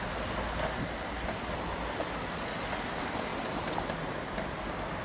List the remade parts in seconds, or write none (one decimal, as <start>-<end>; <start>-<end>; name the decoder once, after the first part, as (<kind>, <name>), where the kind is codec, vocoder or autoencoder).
3.3-4.5 (vocoder, BigVGAN v2)